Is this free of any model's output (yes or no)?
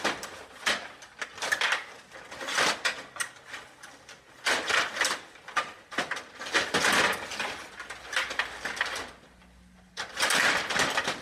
yes